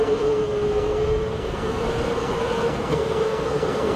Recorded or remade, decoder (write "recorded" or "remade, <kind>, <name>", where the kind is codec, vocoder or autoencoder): remade, codec, SNAC